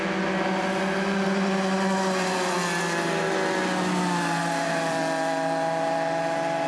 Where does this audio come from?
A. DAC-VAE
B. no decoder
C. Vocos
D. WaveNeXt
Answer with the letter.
B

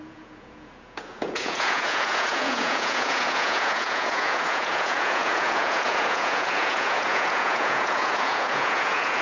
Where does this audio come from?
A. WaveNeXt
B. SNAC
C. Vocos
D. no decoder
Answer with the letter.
C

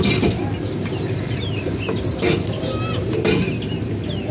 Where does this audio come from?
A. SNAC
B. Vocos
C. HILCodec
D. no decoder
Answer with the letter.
D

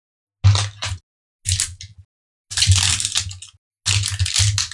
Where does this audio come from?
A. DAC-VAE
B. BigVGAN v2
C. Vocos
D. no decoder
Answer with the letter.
D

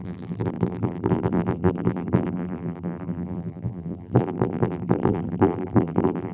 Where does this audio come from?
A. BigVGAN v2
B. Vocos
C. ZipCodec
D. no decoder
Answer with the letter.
A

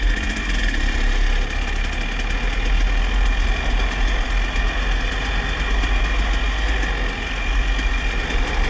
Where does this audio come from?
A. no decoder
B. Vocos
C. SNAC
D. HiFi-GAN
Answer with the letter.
A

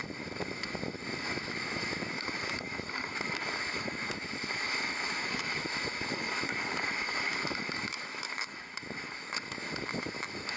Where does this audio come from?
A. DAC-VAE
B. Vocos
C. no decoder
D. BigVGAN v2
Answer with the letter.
A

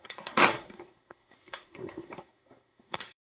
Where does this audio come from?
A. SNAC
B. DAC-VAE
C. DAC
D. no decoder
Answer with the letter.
A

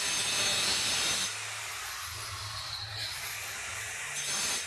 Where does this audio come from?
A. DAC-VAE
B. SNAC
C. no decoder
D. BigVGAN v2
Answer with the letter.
C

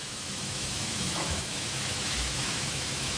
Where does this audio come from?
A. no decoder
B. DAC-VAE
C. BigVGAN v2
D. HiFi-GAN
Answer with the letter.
B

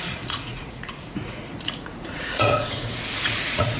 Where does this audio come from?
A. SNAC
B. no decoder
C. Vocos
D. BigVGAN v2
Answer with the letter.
C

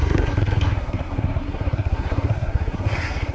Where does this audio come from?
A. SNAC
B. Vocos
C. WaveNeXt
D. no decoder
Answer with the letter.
A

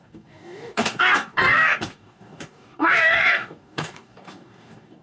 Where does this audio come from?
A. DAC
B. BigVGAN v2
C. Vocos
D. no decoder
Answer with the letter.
A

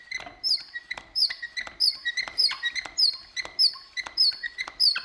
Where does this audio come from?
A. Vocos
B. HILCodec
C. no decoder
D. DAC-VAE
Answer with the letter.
C